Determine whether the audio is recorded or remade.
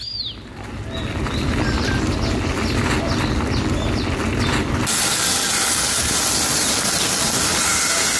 recorded